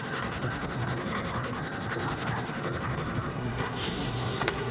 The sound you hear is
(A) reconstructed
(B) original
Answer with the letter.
A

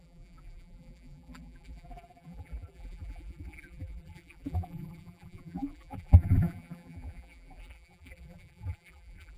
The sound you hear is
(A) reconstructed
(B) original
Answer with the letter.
A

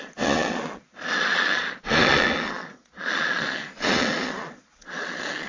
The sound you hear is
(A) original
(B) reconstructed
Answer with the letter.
B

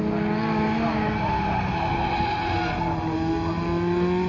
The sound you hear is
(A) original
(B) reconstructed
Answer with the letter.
A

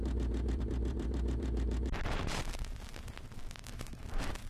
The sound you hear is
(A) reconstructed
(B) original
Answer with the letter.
A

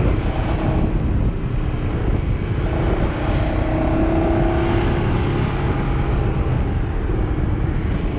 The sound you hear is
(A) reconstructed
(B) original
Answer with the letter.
B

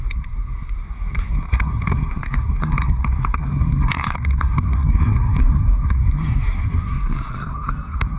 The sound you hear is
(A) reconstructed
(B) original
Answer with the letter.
A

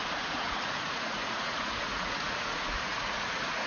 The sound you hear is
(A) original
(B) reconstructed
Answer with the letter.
B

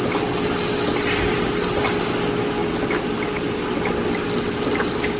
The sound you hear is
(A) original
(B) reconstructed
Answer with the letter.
A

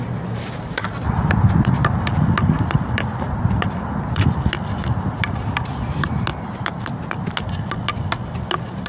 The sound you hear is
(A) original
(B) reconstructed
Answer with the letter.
A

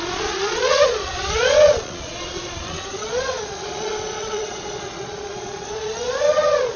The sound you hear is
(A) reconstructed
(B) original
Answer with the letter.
A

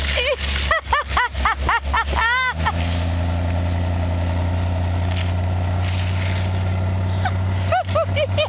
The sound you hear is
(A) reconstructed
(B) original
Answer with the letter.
B